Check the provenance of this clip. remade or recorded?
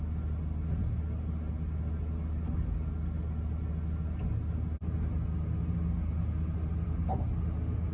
recorded